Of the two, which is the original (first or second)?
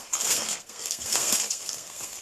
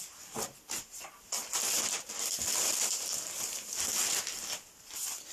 second